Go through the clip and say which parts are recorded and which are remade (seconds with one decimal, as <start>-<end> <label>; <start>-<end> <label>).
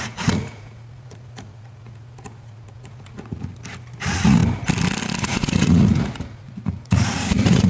0.0-3.5 remade; 3.5-4.0 recorded; 4.0-4.4 remade; 4.4-5.2 recorded; 5.2-7.7 remade